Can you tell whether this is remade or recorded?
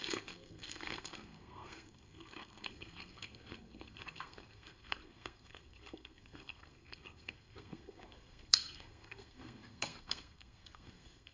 remade